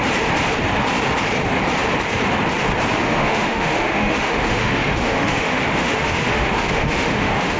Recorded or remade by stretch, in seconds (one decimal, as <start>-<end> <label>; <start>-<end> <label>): 0.0-3.0 recorded; 3.0-7.6 remade